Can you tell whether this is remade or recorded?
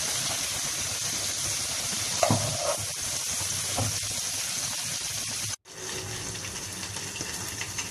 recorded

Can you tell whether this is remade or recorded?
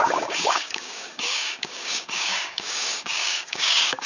remade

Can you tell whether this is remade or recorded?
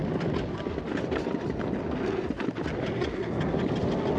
recorded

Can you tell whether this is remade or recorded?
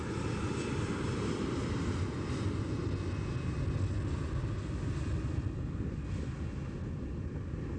recorded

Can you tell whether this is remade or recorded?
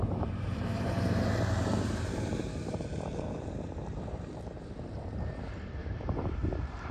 remade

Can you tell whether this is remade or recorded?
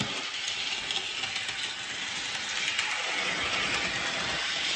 recorded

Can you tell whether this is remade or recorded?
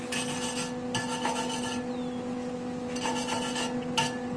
recorded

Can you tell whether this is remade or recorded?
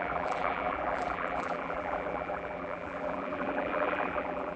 remade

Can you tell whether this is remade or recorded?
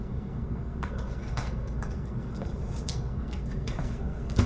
remade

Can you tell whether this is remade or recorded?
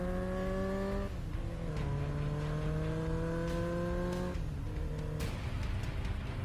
recorded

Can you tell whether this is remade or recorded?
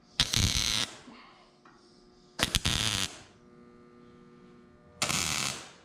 recorded